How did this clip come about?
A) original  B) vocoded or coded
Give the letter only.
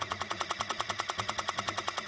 B